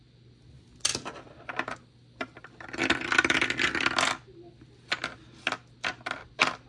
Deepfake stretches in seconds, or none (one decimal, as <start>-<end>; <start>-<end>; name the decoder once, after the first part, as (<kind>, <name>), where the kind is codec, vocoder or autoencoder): none